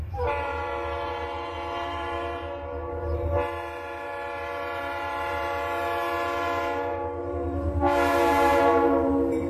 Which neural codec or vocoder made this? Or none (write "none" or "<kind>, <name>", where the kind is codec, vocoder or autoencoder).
vocoder, BigVGAN v2